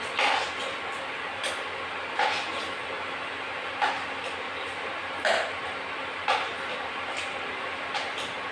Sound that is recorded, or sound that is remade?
recorded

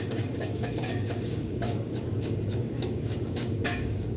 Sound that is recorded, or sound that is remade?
remade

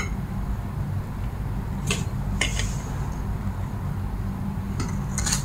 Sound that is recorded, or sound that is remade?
recorded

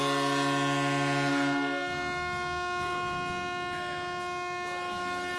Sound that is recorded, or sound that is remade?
recorded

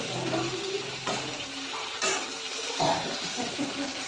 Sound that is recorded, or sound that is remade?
remade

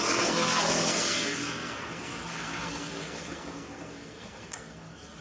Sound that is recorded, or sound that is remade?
remade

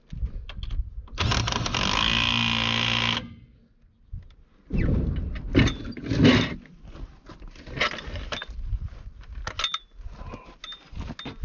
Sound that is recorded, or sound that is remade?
recorded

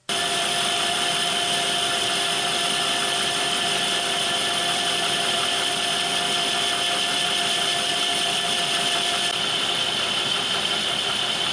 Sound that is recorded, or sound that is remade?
remade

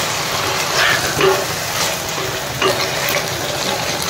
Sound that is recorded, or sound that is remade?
recorded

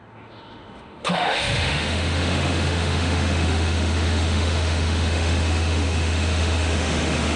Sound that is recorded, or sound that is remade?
remade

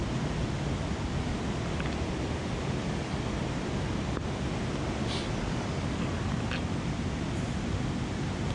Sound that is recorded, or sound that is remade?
recorded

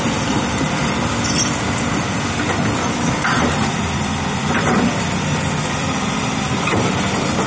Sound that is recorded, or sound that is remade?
remade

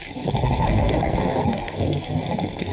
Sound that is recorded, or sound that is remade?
remade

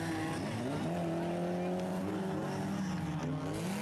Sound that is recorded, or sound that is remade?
recorded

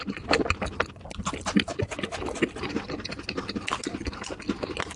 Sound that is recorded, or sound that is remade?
recorded